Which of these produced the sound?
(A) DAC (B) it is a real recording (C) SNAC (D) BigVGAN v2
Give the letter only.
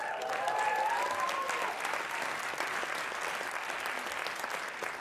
B